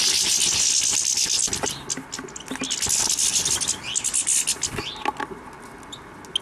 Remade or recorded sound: recorded